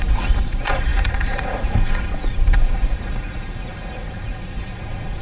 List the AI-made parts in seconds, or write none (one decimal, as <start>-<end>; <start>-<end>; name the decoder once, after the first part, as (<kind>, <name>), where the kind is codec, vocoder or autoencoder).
0.0-5.2 (vocoder, Vocos)